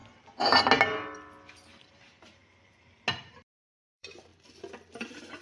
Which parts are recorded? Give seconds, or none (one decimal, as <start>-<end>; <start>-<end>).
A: 0.0-1.8; 2.4-3.3; 4.3-4.9